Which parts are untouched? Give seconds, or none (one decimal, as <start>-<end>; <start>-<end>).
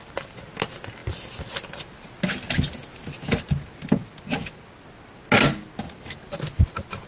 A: 0.0-7.1